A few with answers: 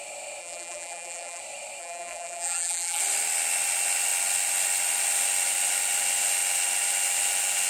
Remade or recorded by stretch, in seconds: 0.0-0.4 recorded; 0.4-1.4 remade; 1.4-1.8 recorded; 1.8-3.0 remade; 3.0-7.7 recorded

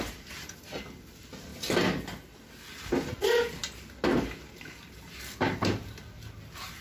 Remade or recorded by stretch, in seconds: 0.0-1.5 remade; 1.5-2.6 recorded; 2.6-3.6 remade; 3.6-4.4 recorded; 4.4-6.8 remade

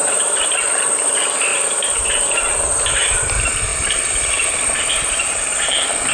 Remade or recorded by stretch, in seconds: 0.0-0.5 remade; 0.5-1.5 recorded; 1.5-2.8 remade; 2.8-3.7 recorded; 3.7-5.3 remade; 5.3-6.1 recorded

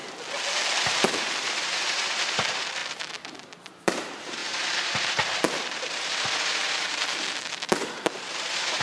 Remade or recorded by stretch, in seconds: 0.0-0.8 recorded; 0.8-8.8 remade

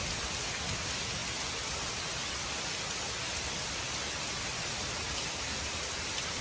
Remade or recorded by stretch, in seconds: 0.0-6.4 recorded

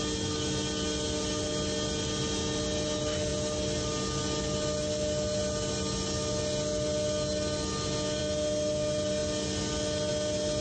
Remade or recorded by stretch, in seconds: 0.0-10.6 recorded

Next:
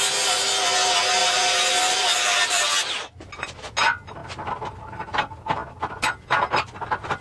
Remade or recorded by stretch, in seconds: 0.0-1.2 recorded; 1.2-2.6 remade; 2.6-7.2 recorded